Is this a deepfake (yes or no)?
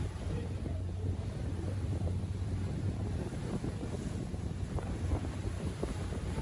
yes